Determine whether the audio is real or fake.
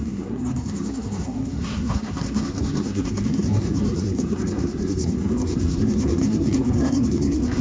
fake